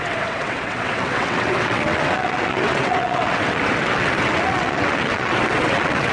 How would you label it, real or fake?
fake